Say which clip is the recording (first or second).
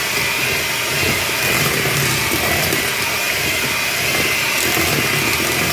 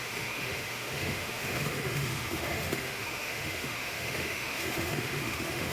first